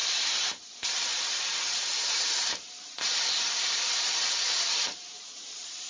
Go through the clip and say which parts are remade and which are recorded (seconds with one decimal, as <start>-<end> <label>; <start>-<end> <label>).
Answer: 0.0-5.9 remade